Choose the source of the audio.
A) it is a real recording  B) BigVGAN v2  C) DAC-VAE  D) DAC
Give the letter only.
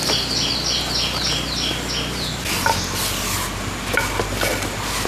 A